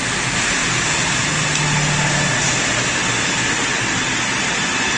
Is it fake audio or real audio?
real